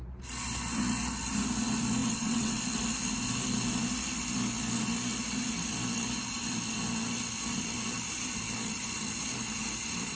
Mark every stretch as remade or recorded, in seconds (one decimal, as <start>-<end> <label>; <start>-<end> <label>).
0.0-2.0 recorded; 2.0-2.6 remade; 2.6-10.1 recorded